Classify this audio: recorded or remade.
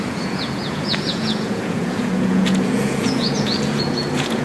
remade